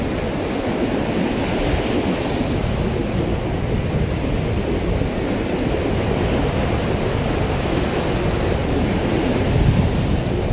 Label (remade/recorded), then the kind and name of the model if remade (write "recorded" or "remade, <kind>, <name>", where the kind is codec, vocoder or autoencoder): recorded